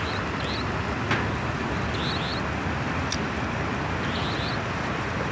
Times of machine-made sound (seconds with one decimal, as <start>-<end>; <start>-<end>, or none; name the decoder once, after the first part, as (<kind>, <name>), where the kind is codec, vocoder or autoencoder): none

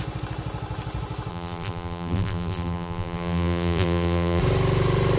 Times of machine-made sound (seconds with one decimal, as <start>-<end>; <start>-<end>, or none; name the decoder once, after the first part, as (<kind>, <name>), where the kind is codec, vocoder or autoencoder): 1.3-4.4 (vocoder, BigVGAN v2)